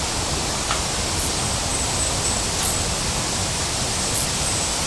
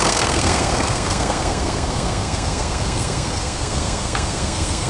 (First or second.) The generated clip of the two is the second